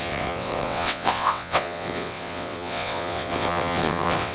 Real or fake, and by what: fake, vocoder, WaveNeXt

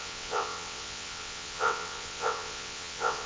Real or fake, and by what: fake, vocoder, WaveNeXt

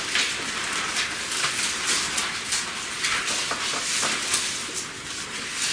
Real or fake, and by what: real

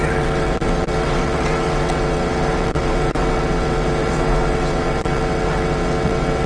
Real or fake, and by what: fake, vocoder, WaveNeXt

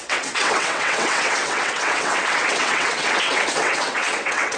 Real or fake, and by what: fake, vocoder, WaveNeXt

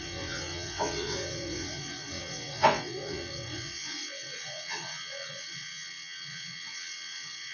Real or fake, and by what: fake, vocoder, WaveNeXt